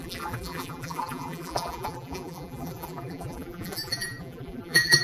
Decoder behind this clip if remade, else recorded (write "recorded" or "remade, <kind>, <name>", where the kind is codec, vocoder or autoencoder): remade, vocoder, BigVGAN v2